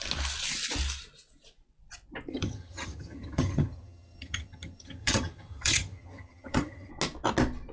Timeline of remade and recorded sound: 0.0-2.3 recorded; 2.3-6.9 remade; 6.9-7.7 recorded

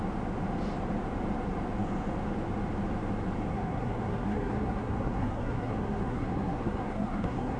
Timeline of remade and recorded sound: 0.0-3.5 recorded; 3.5-7.6 remade

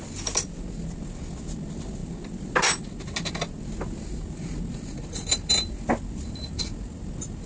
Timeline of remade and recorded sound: 0.0-7.5 recorded

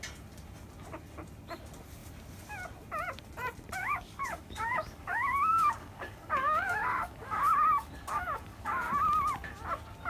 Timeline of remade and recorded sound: 0.0-3.8 recorded; 3.8-8.9 remade; 8.9-10.1 recorded

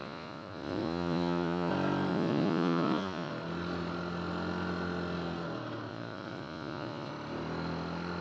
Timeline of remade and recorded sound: 0.0-1.7 remade; 1.7-2.1 recorded; 2.1-3.3 remade; 3.3-5.9 recorded; 5.9-7.1 remade; 7.1-8.2 recorded